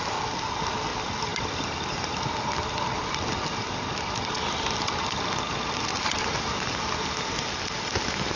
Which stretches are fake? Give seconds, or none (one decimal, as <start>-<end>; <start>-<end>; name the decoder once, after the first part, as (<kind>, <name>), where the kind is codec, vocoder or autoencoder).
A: none

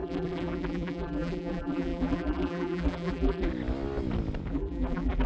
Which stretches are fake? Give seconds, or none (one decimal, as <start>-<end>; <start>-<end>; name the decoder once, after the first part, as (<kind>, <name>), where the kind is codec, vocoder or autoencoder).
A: 0.0-3.5 (vocoder, BigVGAN v2); 4.5-5.3

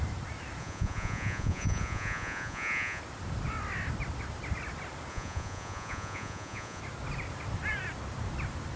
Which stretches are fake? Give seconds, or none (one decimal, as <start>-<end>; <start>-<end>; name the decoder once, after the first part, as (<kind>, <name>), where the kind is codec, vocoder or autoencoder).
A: 0.6-3.0 (vocoder, Vocos); 5.1-6.8

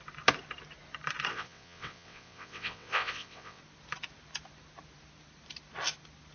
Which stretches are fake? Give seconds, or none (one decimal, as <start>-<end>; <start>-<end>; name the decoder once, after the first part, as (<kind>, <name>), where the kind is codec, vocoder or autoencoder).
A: 1.3-3.6 (vocoder, WaveNeXt)

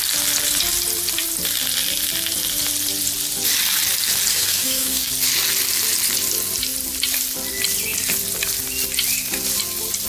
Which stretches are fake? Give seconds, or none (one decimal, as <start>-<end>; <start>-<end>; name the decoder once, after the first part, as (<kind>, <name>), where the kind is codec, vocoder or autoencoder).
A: 4.3-5.1 (codec, DAC)

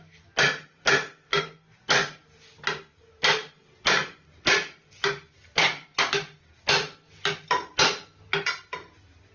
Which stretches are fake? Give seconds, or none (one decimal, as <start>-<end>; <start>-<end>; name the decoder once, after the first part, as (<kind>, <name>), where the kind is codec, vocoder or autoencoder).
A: none